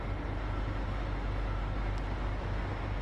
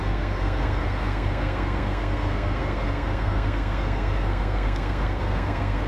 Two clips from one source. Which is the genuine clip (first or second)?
first